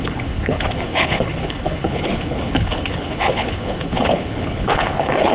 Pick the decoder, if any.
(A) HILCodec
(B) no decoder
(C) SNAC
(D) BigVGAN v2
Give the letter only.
A